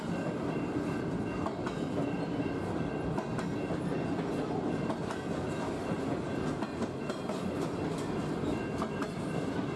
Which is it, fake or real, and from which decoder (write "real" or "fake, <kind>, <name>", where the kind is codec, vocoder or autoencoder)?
real